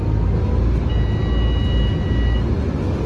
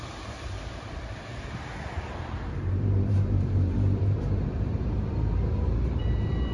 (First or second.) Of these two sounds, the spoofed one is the second